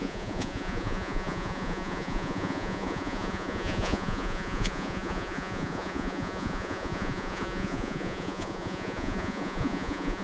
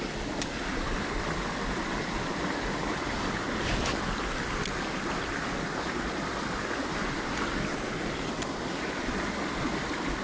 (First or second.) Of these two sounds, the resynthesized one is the first